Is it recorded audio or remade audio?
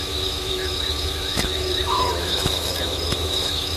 remade